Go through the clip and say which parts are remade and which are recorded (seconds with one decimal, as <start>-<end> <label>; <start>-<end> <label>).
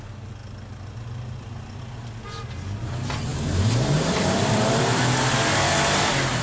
0.0-3.3 recorded; 3.3-5.0 remade; 5.0-6.4 recorded